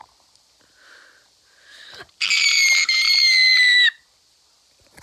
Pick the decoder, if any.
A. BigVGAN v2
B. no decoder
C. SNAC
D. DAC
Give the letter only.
B